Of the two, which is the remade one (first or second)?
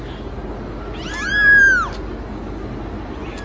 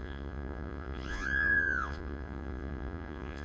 second